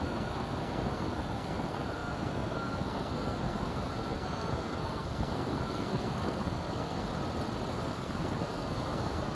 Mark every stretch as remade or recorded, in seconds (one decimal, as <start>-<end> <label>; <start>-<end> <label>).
0.0-7.1 remade; 7.1-7.7 recorded; 7.7-9.3 remade